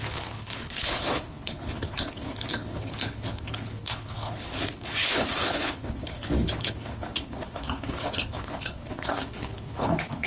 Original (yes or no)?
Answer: no